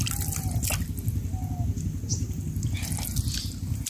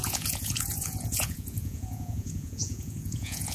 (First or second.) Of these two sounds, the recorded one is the first